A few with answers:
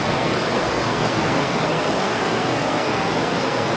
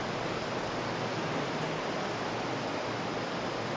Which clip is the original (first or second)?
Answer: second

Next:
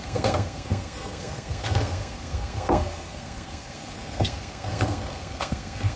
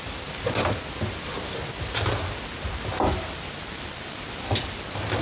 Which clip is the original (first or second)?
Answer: second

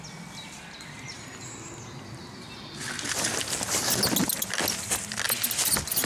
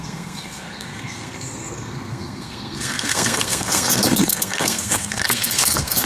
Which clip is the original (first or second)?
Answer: first